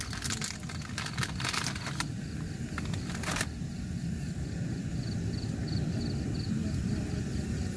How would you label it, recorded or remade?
recorded